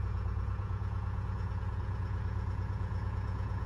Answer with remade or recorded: remade